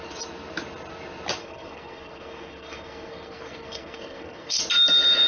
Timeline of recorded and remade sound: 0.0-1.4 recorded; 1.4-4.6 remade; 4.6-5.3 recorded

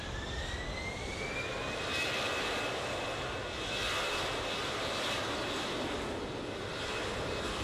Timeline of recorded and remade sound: 0.0-1.1 recorded; 1.1-2.6 remade; 2.6-7.6 recorded

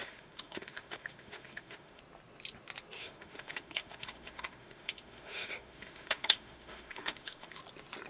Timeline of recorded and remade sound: 0.0-2.0 remade; 2.0-3.0 recorded; 3.0-7.6 remade; 7.6-8.1 recorded

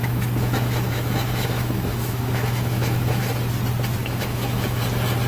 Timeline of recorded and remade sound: 0.0-3.2 remade; 3.2-4.0 recorded; 4.0-4.8 remade; 4.8-5.3 recorded

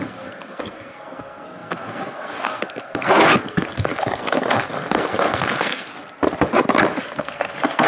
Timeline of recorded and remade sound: 0.0-5.9 remade; 5.9-7.0 recorded; 7.0-7.9 remade

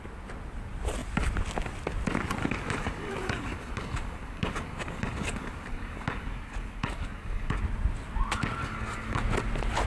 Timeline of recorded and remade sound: 0.0-2.4 recorded; 2.4-7.6 remade; 7.6-8.6 recorded; 8.6-9.2 remade; 9.2-9.9 recorded

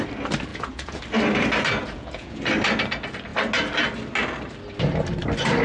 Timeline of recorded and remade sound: 0.0-0.5 recorded; 0.5-1.0 remade; 1.0-1.8 recorded; 1.8-2.4 remade; 2.4-5.6 recorded